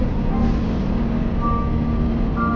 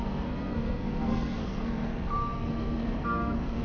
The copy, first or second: second